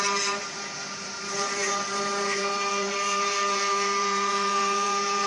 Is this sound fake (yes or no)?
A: yes